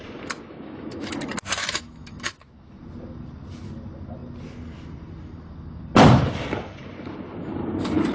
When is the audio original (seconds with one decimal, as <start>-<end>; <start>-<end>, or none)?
0.0-0.4; 1.2-1.6; 2.8-8.1

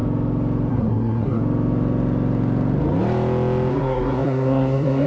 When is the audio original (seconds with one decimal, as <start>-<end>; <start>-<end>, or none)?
0.0-0.7; 1.4-3.7

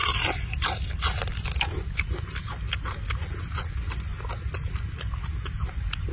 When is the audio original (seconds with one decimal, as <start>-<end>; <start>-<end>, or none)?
0.0-6.1

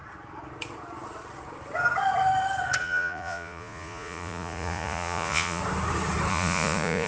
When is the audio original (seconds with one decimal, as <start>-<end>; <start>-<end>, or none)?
0.0-2.8; 5.6-6.3

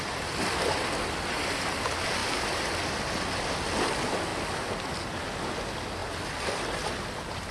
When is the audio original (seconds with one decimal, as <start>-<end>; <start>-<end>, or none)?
0.0-7.5

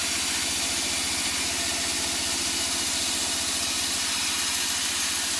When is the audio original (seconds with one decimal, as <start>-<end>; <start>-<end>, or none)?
0.0-5.4

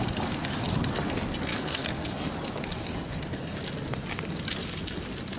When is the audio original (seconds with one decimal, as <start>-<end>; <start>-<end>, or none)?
0.0-1.5; 2.3-5.4

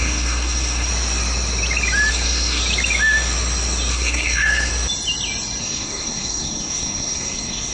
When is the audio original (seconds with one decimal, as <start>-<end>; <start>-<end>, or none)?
0.9-2.1; 2.6-3.9; 4.7-5.6